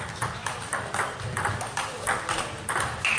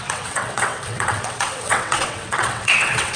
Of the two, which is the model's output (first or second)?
second